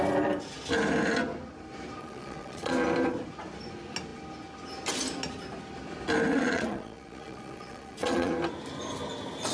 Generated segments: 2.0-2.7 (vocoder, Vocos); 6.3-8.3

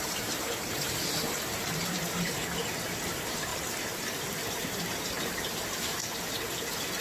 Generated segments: 0.0-3.5 (vocoder, BigVGAN v2); 4.5-6.0

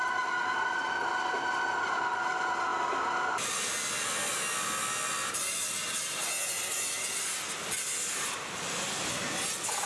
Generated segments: none

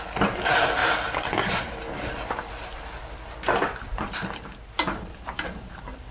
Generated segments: 0.8-2.3 (vocoder, BigVGAN v2); 2.7-6.1

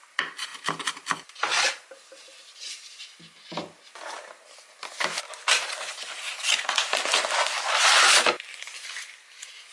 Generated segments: none